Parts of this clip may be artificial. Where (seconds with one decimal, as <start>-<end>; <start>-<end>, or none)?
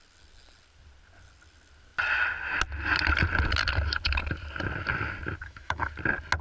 5.4-5.9